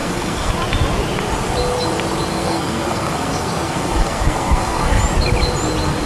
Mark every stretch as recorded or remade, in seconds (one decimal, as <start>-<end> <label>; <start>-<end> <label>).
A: 0.0-0.5 remade; 0.5-2.3 recorded; 2.3-5.0 remade; 5.0-6.1 recorded